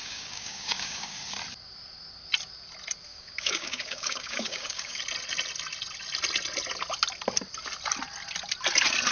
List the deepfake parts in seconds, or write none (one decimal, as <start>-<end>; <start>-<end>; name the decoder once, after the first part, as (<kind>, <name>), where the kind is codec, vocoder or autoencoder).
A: 0.0-1.2 (codec, DAC); 3.1-5.0